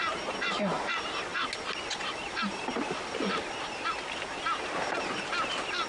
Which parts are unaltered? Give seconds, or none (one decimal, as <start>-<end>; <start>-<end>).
0.0-5.9